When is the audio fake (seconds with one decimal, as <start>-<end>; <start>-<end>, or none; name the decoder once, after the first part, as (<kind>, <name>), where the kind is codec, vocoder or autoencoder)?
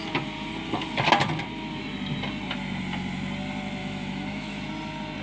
3.8-4.6 (autoencoder, DAC-VAE)